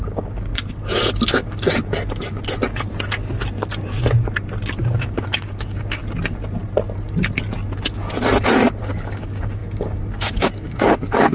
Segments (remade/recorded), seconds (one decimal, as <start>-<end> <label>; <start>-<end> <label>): 0.0-0.5 remade; 0.5-5.0 recorded; 5.0-6.0 remade; 6.0-8.8 recorded; 8.8-11.3 remade